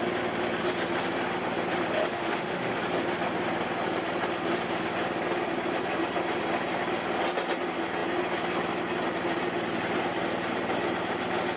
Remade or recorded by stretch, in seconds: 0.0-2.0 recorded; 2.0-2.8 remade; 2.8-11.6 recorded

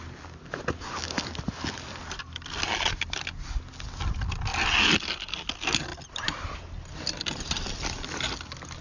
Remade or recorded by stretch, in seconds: 0.0-8.8 recorded

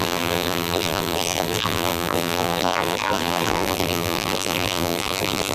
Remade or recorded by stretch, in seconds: 0.0-5.5 remade

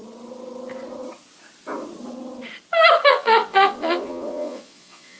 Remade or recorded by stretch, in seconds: 0.0-3.1 recorded; 3.1-5.2 remade

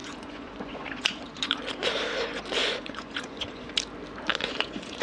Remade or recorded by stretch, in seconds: 0.0-1.6 remade; 1.6-2.6 recorded; 2.6-3.7 remade; 3.7-4.3 recorded; 4.3-5.0 remade